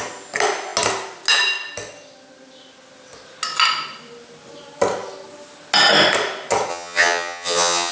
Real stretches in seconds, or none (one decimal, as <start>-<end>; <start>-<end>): 0.0-6.7